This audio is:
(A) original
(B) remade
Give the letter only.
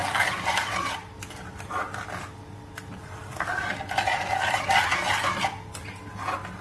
A